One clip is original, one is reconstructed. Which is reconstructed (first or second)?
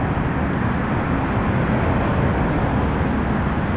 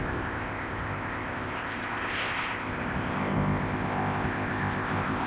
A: second